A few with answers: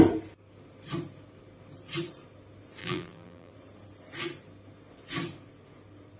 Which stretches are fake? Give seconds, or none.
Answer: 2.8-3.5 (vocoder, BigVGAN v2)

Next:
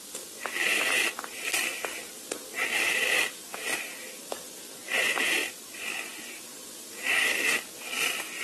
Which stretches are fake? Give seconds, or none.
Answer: 0.0-8.4 (vocoder, BigVGAN v2)

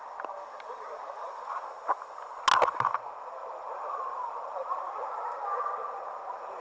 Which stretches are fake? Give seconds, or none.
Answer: 3.4-5.1 (vocoder, BigVGAN v2)